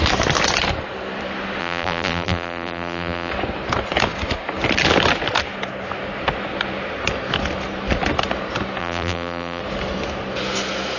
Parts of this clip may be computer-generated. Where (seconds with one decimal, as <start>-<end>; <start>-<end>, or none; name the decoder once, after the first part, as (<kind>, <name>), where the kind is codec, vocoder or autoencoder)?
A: 1.6-3.3 (vocoder, BigVGAN v2); 8.8-9.6